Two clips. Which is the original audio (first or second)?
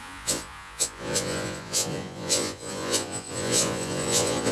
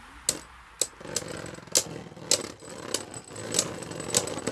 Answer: second